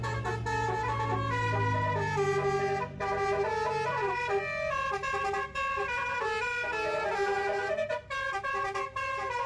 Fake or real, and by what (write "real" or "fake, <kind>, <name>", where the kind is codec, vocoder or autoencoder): real